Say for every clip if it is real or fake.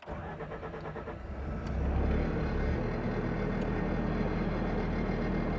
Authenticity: real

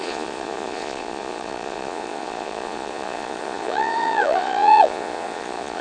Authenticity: fake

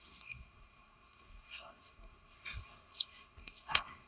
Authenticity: fake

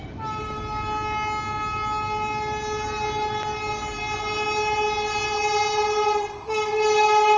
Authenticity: real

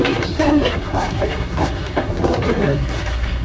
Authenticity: fake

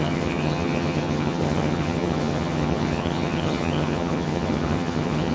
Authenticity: fake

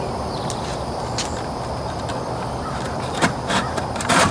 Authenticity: real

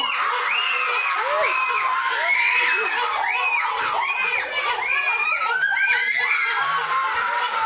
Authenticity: real